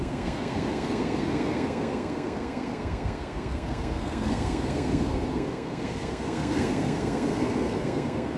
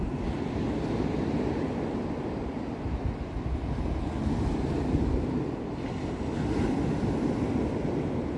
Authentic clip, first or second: second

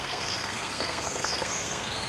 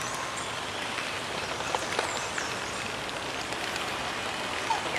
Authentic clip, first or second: second